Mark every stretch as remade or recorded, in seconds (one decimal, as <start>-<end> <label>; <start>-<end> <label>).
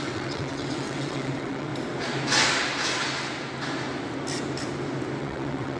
0.0-1.7 remade; 1.7-5.2 recorded; 5.2-5.8 remade